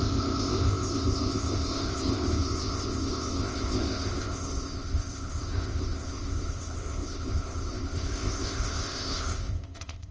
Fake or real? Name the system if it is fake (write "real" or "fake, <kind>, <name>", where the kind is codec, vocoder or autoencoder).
fake, codec, ZipCodec